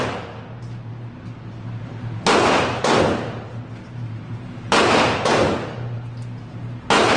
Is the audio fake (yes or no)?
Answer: no